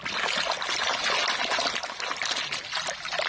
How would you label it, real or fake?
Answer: real